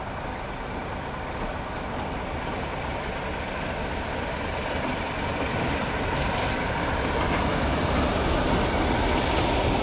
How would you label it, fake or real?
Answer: real